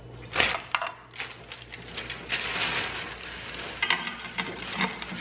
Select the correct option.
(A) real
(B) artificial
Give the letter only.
A